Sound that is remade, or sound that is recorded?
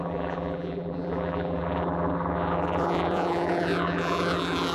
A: remade